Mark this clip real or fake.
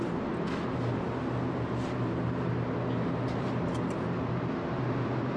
real